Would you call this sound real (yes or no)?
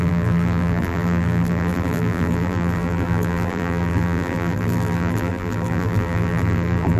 no